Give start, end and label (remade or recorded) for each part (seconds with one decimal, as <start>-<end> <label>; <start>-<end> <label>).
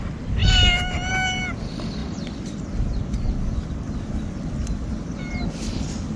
0.0-6.2 recorded